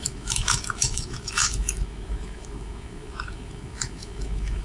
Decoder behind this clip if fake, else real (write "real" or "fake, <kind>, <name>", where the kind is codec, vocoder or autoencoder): fake, autoencoder, DAC-VAE